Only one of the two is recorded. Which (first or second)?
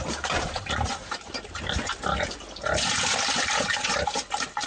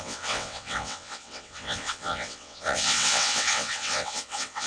first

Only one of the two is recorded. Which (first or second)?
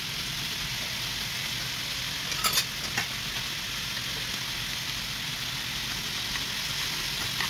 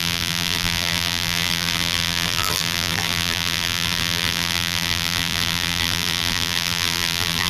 first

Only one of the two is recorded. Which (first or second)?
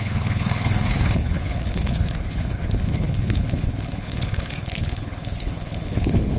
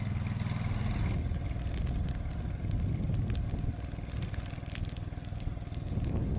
second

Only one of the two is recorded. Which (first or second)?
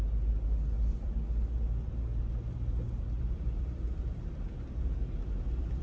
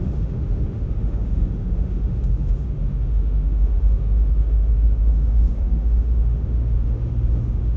first